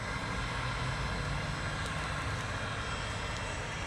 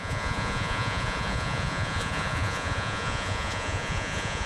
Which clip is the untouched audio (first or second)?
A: first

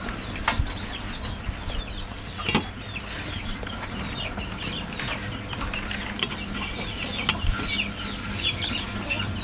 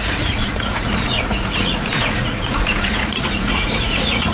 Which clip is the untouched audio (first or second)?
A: first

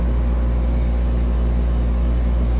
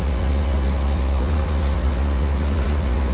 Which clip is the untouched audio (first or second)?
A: first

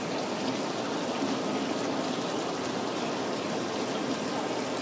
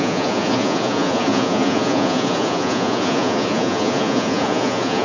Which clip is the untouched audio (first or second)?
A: first